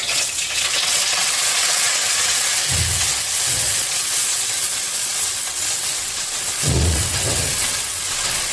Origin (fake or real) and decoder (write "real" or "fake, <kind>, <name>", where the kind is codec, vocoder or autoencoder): fake, vocoder, WaveNeXt